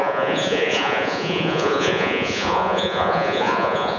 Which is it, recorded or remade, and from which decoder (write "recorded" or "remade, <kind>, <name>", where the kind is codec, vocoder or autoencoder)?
remade, vocoder, Vocos